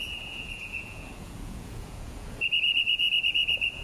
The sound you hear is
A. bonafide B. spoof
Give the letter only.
B